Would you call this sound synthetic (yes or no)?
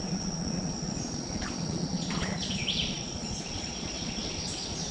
yes